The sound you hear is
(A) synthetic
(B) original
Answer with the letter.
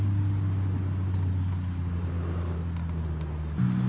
A